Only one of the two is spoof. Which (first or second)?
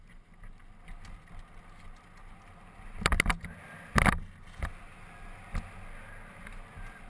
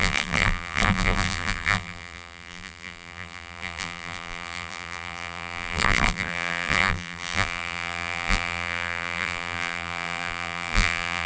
second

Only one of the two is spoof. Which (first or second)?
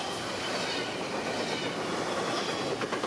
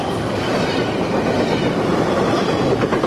second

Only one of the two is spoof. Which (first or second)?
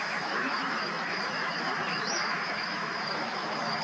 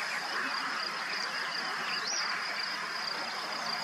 first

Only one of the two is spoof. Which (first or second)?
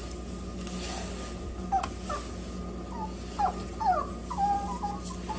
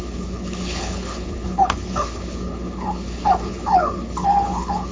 second